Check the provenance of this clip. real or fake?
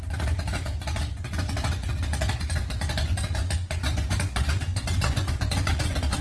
fake